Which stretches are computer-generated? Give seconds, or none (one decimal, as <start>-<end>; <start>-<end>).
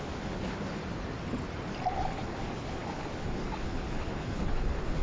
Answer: 0.0-0.8; 2.0-5.0